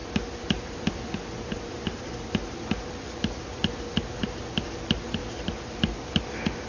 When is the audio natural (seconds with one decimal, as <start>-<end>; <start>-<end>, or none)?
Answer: 0.0-6.7